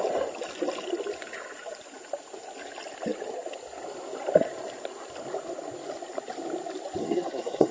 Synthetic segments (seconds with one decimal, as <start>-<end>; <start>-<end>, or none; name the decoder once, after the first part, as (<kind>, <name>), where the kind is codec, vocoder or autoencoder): 7.0-7.7 (codec, SNAC)

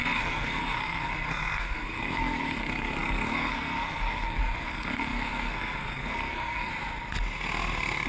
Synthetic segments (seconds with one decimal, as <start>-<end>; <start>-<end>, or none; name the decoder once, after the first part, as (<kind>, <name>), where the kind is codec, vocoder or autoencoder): 0.0-6.7 (codec, SNAC)

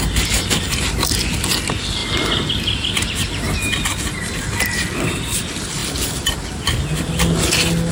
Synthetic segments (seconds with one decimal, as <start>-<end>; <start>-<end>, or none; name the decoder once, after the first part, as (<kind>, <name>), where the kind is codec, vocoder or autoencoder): none

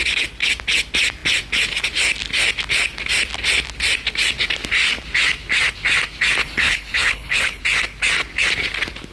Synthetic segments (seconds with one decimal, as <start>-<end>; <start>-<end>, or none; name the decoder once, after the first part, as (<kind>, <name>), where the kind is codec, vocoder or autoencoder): 6.4-7.6 (codec, HILCodec)

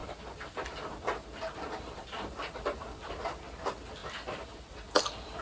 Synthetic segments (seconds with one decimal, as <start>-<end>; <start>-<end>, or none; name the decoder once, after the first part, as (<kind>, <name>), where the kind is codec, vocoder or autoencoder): none

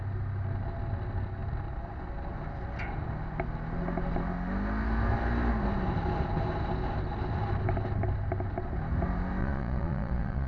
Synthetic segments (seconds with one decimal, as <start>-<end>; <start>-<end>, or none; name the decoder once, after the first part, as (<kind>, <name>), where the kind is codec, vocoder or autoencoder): 9.4-10.5 (vocoder, Vocos)

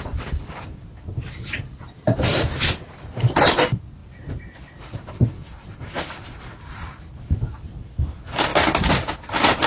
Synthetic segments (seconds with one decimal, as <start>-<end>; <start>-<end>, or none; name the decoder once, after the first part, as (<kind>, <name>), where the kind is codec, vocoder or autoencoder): 4.0-7.4 (vocoder, BigVGAN v2)

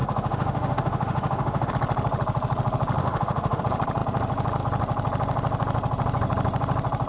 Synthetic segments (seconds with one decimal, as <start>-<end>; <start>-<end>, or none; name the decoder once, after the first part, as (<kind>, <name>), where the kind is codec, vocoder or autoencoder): 0.0-1.7 (autoencoder, DAC-VAE); 3.0-3.6